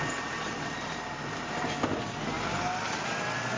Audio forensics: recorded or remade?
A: recorded